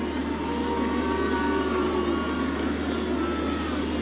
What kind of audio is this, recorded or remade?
recorded